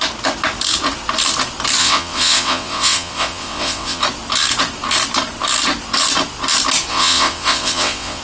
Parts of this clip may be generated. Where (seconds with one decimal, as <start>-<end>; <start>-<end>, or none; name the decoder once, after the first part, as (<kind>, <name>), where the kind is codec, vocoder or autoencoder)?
1.8-4.0 (vocoder, WaveNeXt); 6.9-8.2